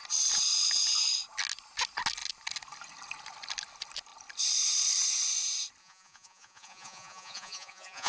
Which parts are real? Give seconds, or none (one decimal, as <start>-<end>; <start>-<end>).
0.0-5.8